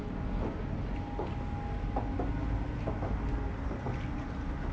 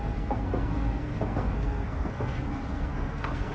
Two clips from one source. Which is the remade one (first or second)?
second